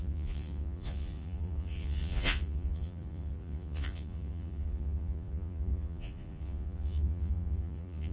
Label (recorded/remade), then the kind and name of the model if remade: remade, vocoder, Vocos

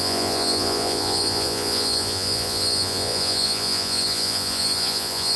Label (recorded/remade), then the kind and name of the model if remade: remade, vocoder, Vocos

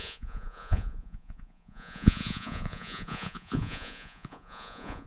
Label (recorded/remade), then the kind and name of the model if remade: remade, vocoder, Vocos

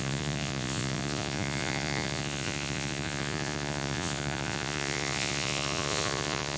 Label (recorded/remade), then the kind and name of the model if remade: remade, vocoder, Vocos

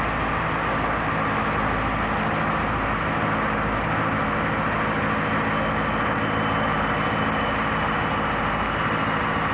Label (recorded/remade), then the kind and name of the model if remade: recorded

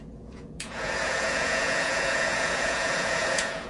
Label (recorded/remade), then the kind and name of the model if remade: remade, vocoder, Vocos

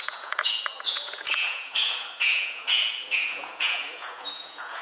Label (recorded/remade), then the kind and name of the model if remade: remade, vocoder, Vocos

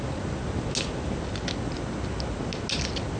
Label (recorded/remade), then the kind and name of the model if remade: recorded